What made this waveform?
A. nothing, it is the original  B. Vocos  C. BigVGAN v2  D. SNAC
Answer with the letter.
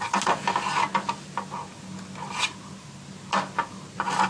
A